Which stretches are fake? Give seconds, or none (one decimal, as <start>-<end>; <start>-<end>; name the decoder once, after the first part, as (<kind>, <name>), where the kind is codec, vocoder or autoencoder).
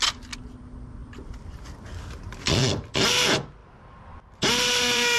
1.0-2.9 (vocoder, BigVGAN v2); 3.6-5.2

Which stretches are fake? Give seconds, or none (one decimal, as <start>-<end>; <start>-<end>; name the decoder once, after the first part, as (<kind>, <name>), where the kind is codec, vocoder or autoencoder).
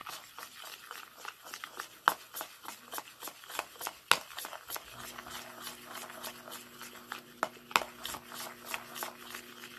0.0-0.9 (vocoder, BigVGAN v2)